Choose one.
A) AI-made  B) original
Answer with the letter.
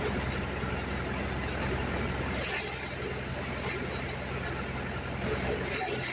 B